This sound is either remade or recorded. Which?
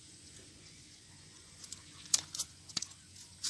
remade